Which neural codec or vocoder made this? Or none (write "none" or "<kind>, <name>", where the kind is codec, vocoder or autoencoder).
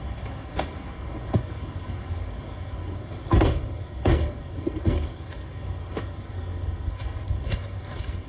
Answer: codec, SNAC